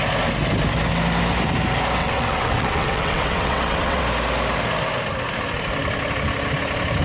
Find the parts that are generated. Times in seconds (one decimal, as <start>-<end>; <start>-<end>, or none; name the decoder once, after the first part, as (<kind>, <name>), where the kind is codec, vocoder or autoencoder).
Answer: 2.0-4.0 (vocoder, WaveNeXt)